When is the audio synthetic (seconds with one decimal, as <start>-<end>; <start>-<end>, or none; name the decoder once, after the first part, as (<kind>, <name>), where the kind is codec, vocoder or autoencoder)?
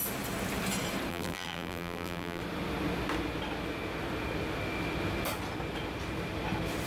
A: 1.1-2.4 (vocoder, BigVGAN v2)